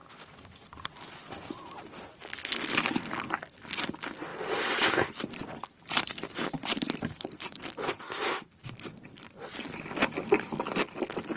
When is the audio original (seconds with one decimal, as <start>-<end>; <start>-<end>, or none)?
3.0-4.3; 8.6-11.4